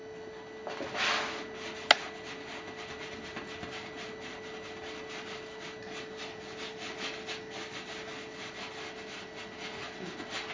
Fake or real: real